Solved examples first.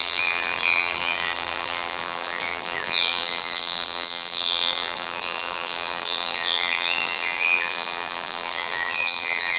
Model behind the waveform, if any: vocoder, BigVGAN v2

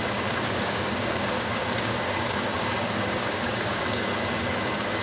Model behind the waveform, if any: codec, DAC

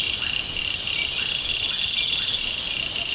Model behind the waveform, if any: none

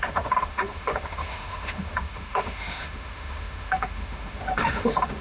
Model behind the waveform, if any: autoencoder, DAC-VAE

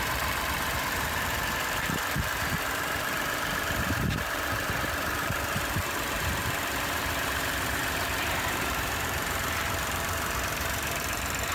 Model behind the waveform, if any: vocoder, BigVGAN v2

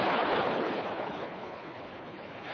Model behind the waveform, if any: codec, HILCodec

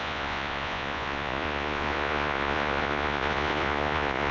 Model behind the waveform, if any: vocoder, Vocos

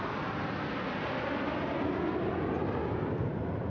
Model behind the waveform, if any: none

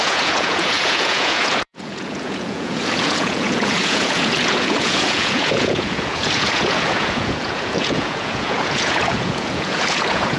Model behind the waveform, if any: vocoder, Vocos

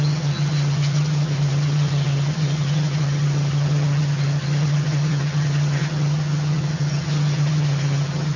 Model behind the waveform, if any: vocoder, HiFi-GAN